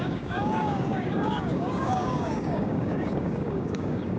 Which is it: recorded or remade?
remade